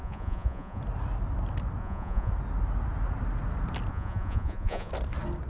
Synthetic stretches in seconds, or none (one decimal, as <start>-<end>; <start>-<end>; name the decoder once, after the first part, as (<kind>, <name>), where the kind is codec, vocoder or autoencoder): 0.0-0.8 (vocoder, Vocos); 1.8-2.3; 3.9-4.9